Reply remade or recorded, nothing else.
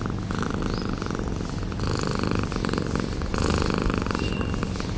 recorded